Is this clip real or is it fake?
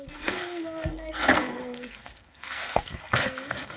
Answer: fake